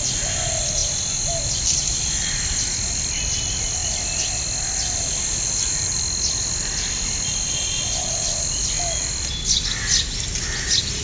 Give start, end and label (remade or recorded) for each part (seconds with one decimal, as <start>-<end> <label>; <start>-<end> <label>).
0.0-11.0 recorded